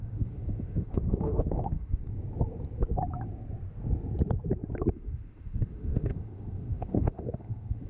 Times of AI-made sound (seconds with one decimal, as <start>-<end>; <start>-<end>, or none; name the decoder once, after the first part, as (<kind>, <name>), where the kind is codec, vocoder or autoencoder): 0.0-2.0 (autoencoder, DAC-VAE); 4.9-7.9

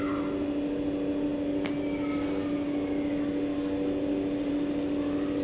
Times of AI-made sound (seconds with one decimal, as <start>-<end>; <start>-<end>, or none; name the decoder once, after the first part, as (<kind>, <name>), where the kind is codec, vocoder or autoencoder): none

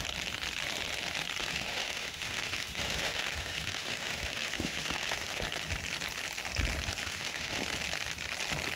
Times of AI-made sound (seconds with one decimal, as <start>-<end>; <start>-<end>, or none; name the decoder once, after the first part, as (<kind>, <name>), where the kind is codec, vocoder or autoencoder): 1.4-5.4 (autoencoder, DAC-VAE); 7.0-7.6

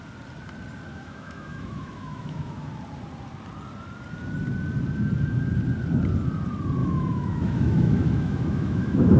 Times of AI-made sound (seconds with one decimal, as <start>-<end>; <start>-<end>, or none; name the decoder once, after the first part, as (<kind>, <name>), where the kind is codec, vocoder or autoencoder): 0.9-2.7 (autoencoder, DAC-VAE); 6.8-9.2

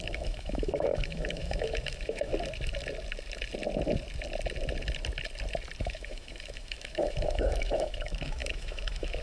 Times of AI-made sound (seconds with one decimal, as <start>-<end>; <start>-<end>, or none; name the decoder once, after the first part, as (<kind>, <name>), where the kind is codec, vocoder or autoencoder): 0.0-2.3 (autoencoder, DAC-VAE); 5.8-9.2

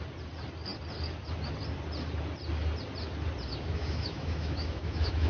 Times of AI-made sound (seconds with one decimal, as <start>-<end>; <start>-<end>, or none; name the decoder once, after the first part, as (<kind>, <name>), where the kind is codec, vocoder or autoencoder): 3.5-5.3 (autoencoder, DAC-VAE)